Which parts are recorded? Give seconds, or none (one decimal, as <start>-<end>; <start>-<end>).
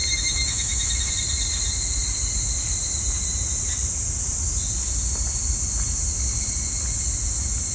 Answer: 1.1-7.7